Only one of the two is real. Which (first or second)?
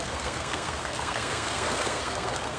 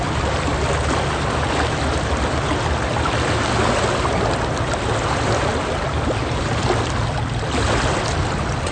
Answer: second